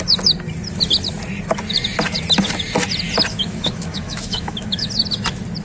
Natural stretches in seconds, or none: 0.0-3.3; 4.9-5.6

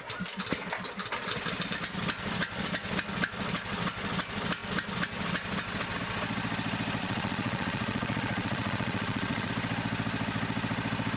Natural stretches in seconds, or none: 0.0-7.0; 9.5-11.2

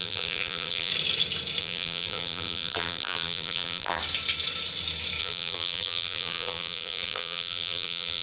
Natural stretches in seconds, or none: 0.9-1.6; 4.0-5.2

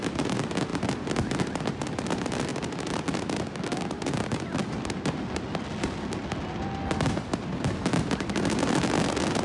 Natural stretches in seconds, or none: 0.0-9.4

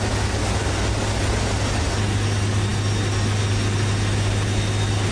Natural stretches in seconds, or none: 0.0-5.1